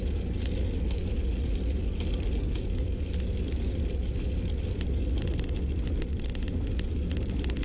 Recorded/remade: recorded